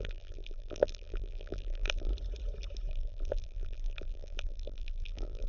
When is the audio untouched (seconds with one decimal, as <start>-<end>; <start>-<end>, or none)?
2.1-2.9